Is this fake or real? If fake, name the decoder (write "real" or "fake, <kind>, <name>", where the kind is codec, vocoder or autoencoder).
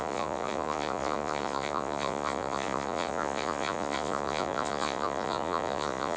fake, vocoder, Vocos